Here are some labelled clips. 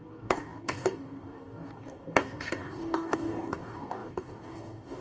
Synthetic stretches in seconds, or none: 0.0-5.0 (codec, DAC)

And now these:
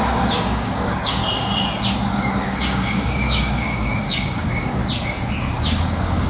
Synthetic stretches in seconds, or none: 0.0-1.2 (codec, DAC); 2.1-4.8; 5.4-6.3

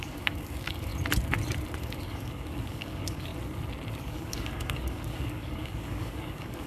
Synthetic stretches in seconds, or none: 0.0-0.9 (codec, DAC); 1.8-3.3; 3.9-6.7